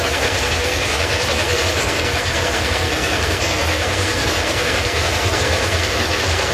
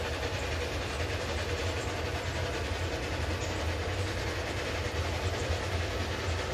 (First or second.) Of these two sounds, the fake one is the first